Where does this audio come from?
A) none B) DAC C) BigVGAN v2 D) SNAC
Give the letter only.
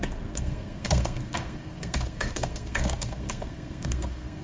D